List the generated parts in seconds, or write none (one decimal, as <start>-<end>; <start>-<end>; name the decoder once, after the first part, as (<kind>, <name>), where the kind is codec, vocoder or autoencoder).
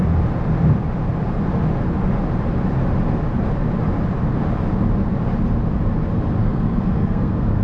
6.4-7.6 (codec, SNAC)